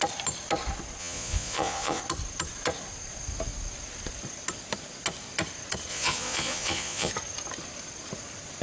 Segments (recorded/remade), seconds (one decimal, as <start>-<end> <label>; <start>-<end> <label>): 0.0-1.0 recorded; 1.0-2.0 remade; 2.0-5.9 recorded; 5.9-7.1 remade; 7.1-8.6 recorded